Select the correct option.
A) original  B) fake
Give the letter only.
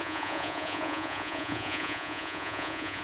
B